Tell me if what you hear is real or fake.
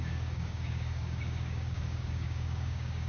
fake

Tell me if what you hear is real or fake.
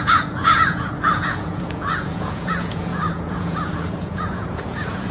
fake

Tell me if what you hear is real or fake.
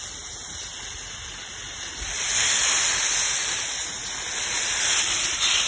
real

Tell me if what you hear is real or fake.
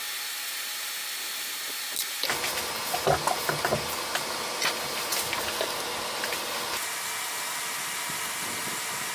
real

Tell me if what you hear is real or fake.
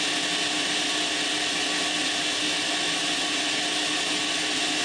real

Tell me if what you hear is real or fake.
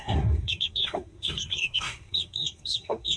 fake